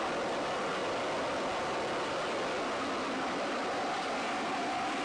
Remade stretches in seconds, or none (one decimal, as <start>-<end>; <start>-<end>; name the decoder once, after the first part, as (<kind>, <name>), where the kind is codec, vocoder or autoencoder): none